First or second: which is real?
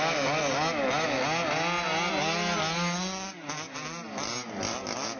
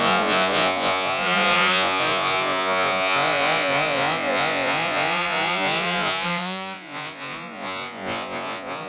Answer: first